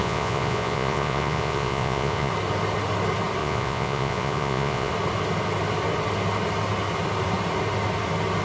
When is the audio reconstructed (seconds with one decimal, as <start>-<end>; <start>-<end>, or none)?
0.0-2.3; 3.4-4.9